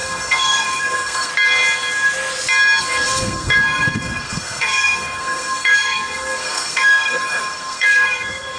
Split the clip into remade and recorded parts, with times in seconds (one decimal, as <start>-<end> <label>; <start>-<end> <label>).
0.0-1.3 remade; 1.3-2.8 recorded; 2.8-8.6 remade